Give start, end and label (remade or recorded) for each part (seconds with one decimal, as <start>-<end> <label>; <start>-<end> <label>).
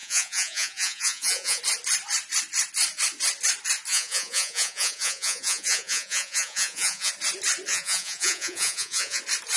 0.0-1.6 remade; 1.6-3.9 recorded; 3.9-7.1 remade; 7.1-7.7 recorded; 7.7-9.2 remade; 9.2-9.6 recorded